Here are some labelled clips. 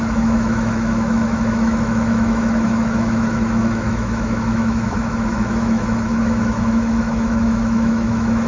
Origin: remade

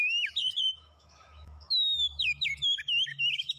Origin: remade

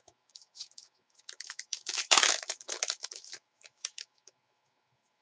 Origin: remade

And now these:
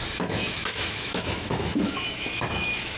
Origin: remade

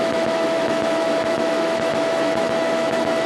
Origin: remade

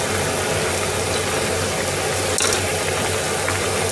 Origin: recorded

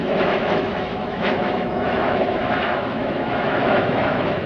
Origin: remade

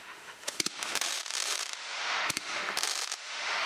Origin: remade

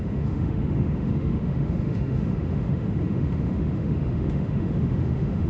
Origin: remade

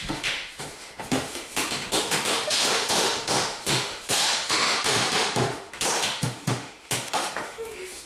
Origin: remade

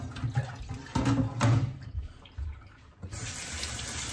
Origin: recorded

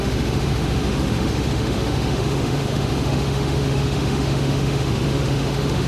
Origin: remade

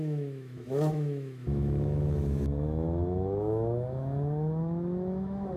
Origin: remade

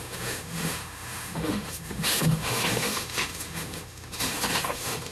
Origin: remade